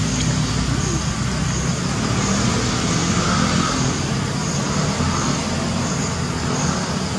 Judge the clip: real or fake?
real